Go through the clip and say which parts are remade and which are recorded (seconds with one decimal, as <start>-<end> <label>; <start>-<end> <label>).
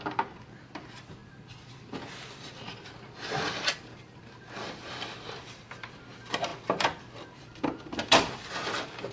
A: 0.0-9.1 remade